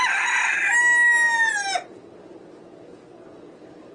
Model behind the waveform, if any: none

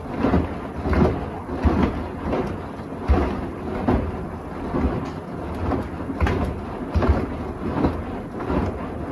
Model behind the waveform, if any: none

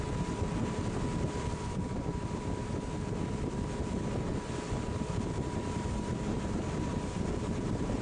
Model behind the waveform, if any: vocoder, BigVGAN v2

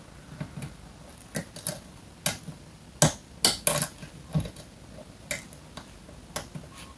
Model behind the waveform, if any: none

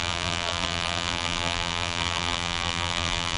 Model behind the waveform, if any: vocoder, BigVGAN v2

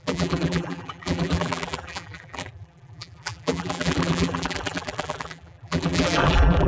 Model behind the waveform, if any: vocoder, BigVGAN v2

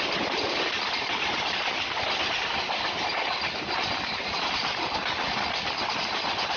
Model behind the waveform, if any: vocoder, BigVGAN v2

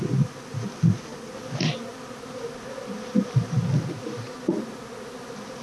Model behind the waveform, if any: none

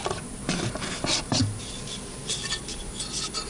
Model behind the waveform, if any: none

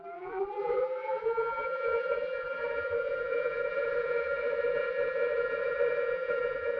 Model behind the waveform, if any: vocoder, BigVGAN v2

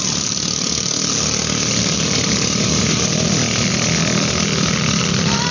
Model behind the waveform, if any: none